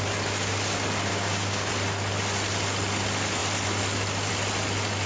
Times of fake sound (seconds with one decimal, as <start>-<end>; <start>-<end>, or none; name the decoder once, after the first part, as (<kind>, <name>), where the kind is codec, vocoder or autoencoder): 1.1-1.7 (codec, DAC)